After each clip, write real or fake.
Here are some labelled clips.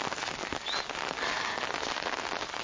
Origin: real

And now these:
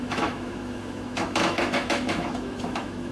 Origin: fake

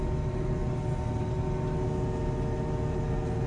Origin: real